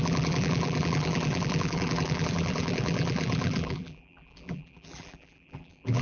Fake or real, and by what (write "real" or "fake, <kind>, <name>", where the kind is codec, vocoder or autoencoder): fake, vocoder, BigVGAN v2